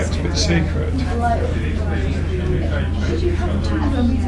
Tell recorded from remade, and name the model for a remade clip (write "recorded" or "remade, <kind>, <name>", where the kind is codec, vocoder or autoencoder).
recorded